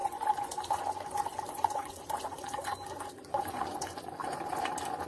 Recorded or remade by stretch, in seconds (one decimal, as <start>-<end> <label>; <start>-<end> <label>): 0.0-4.2 remade; 4.2-5.1 recorded